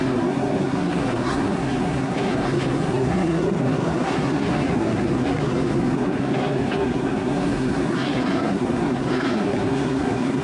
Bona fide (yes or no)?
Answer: no